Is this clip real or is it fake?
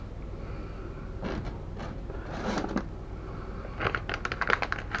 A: real